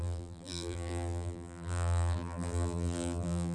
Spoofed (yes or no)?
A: yes